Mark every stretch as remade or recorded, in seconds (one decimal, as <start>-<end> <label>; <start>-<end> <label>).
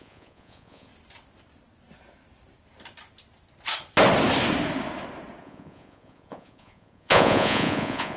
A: 0.0-0.9 remade; 0.9-5.4 recorded; 5.4-8.2 remade